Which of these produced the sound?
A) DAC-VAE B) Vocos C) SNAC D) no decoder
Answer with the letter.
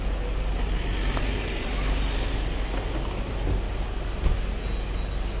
D